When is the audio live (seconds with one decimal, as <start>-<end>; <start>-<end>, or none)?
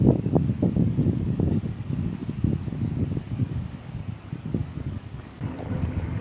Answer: none